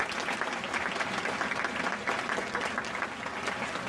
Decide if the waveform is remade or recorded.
recorded